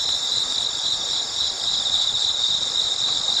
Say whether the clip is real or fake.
real